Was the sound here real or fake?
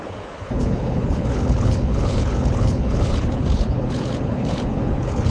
fake